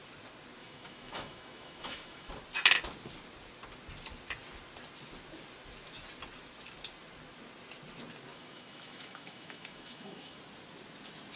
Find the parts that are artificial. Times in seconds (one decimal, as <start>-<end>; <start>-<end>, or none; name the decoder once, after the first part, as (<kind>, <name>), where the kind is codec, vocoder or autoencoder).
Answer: 0.6-2.3 (autoencoder, DAC-VAE); 8.3-10.4